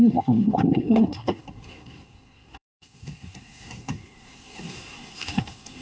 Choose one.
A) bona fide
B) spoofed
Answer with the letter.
B